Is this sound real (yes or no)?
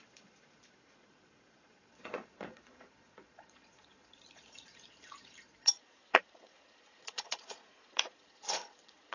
no